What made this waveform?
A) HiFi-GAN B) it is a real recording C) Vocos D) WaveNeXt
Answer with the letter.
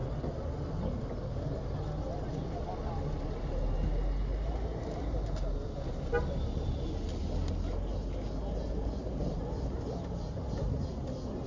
B